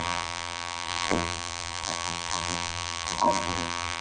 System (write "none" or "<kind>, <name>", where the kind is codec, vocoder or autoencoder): vocoder, BigVGAN v2